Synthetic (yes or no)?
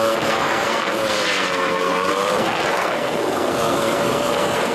yes